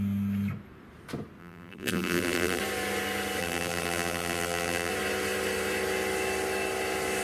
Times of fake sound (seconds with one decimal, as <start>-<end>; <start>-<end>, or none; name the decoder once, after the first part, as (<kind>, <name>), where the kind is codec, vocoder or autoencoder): 1.4-2.6 (vocoder, BigVGAN v2); 3.4-4.9